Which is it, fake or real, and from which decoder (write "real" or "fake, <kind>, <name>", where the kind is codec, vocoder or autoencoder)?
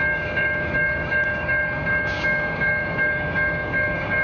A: fake, codec, DAC